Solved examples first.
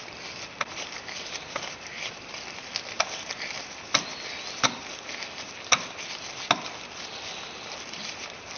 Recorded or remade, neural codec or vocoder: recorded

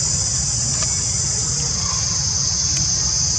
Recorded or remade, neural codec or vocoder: recorded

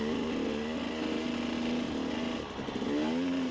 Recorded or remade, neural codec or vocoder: recorded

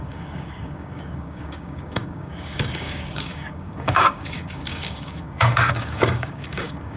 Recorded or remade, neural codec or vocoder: remade, codec, DAC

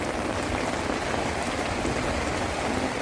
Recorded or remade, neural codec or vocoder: recorded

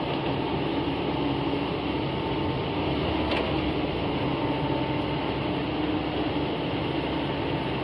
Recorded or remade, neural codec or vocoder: recorded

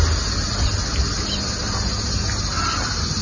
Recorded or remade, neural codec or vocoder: recorded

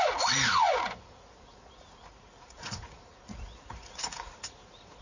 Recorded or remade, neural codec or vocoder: remade, vocoder, Vocos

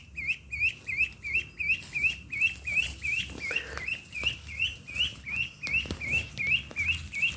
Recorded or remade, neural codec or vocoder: recorded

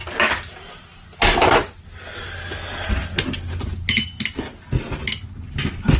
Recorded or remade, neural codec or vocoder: recorded